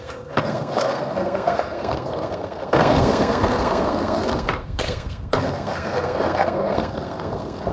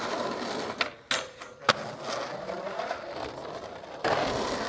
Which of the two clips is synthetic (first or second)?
first